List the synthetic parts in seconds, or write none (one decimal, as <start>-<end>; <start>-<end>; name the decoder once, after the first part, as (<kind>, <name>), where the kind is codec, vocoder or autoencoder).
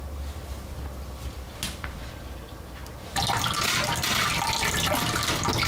none